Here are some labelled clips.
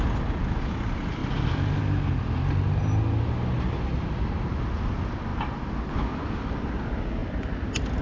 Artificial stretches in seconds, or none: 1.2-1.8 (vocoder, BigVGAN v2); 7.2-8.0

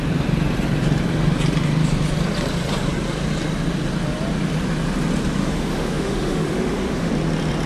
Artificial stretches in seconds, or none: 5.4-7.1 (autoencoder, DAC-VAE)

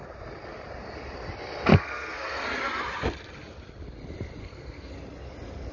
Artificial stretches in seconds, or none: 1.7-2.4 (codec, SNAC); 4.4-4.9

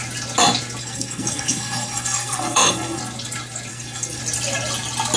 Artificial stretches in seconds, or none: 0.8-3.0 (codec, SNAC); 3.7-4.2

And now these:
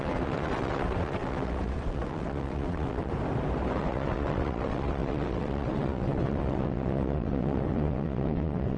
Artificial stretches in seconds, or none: 0.0-3.1 (vocoder, WaveNeXt); 3.7-8.8